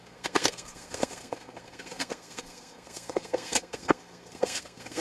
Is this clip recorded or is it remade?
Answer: remade